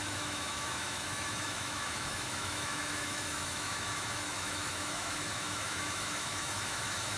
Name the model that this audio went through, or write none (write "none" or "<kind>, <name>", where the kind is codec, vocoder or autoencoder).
autoencoder, DAC-VAE